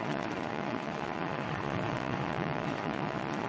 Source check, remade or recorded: remade